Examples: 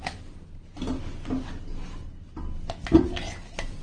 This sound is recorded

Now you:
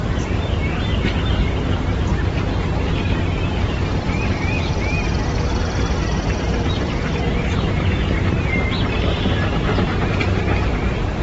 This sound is remade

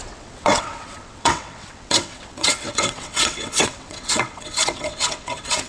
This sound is remade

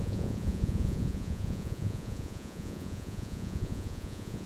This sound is remade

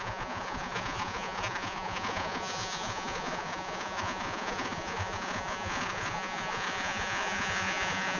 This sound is remade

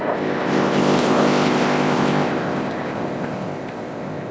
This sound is remade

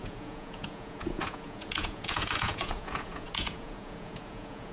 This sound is remade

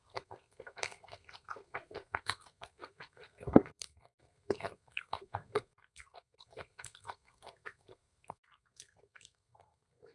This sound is remade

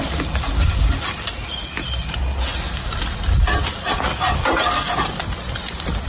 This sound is recorded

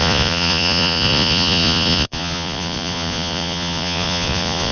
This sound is remade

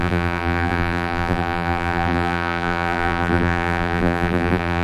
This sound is remade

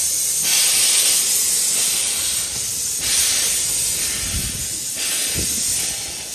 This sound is recorded